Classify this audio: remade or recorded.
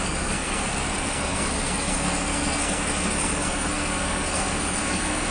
remade